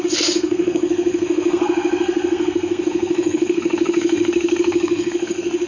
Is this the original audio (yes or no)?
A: no